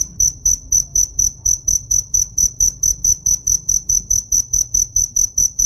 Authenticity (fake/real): fake